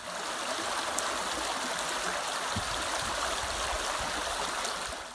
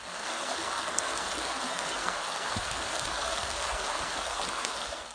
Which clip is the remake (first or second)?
second